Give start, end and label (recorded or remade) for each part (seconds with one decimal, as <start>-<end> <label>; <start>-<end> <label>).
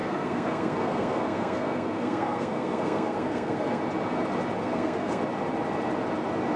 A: 0.0-3.8 remade; 3.8-4.6 recorded; 4.6-5.2 remade; 5.2-6.6 recorded